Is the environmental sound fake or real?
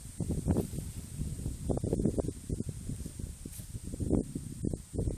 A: real